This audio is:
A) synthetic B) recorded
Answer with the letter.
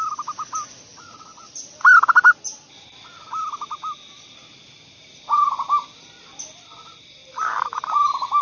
B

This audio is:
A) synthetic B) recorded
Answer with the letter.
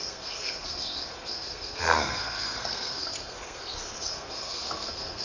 A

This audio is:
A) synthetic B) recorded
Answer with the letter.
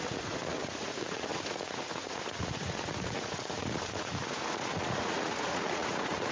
A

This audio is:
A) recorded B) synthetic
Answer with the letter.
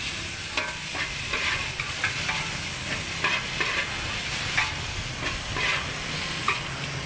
A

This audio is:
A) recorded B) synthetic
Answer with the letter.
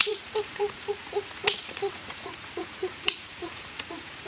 B